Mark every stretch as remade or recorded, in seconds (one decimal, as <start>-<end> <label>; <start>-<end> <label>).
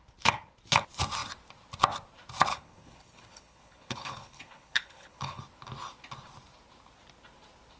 0.0-2.5 recorded; 2.5-5.4 remade; 5.4-7.8 recorded